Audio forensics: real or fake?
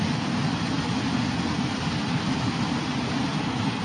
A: real